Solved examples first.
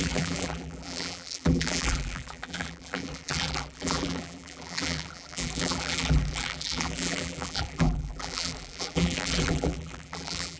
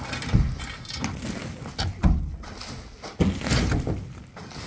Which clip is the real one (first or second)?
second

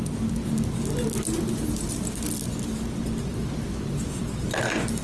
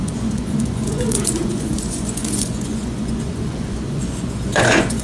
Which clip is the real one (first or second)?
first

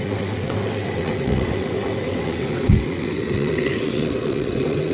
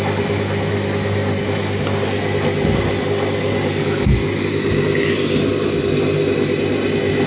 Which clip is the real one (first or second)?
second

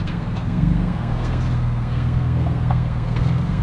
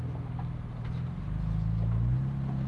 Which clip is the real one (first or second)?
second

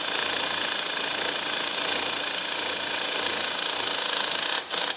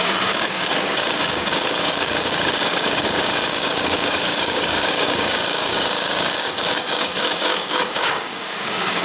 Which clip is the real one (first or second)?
first